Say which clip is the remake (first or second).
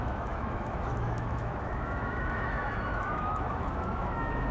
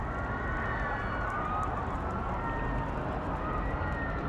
first